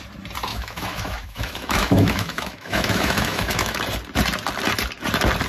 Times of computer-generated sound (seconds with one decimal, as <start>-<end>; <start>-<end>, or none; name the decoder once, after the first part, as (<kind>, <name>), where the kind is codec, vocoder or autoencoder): 0.5-3.8 (autoencoder, DAC-VAE)